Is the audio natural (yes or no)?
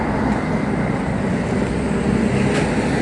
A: yes